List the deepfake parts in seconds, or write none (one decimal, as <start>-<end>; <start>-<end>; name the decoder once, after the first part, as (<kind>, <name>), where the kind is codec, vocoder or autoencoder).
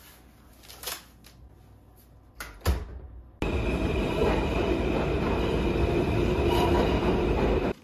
none